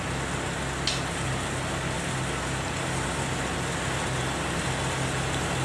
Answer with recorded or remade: recorded